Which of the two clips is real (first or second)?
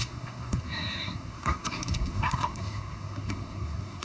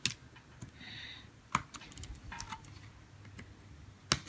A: second